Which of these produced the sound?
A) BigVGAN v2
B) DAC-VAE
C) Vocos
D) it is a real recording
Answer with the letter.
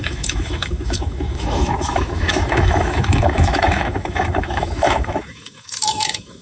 B